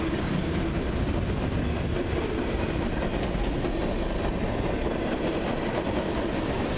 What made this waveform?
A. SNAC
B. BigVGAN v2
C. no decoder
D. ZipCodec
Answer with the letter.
C